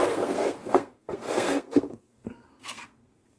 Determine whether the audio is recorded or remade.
remade